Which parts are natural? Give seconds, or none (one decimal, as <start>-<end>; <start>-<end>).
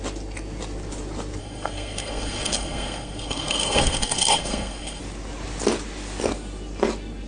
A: 0.0-1.4; 5.0-7.3